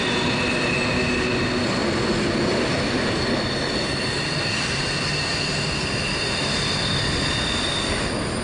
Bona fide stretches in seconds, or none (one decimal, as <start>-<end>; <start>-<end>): 0.0-8.4